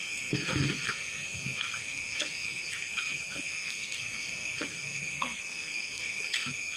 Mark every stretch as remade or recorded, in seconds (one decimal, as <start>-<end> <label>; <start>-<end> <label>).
0.0-6.8 remade